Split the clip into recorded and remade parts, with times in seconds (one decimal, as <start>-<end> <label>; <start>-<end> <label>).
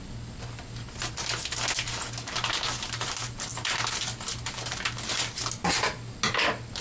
0.0-6.8 recorded